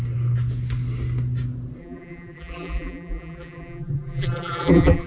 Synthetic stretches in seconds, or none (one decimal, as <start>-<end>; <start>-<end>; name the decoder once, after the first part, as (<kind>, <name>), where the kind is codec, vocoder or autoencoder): 1.8-5.1 (vocoder, BigVGAN v2)